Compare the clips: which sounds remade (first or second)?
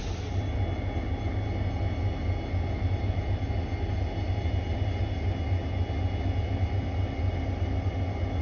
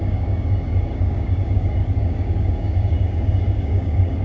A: second